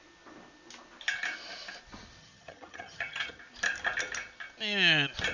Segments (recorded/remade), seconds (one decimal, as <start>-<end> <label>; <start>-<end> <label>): 0.0-2.2 recorded; 2.2-3.4 remade; 3.4-5.3 recorded